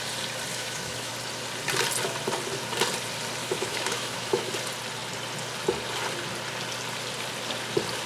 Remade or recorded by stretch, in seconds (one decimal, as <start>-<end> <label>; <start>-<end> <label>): 0.0-0.5 recorded; 0.5-1.1 remade; 1.1-3.4 recorded; 3.4-4.5 remade; 4.5-8.1 recorded

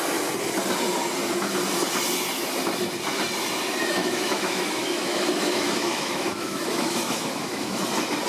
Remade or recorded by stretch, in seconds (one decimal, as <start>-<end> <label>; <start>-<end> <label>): 0.0-4.0 recorded; 4.0-7.8 remade; 7.8-8.3 recorded

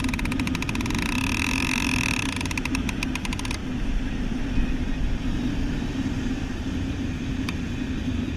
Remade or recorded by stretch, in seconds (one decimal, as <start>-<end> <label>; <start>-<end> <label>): 0.0-8.4 recorded

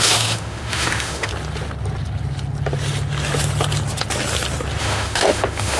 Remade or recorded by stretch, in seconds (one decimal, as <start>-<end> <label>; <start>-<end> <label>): 0.0-1.3 remade; 1.3-4.8 recorded; 4.8-5.8 remade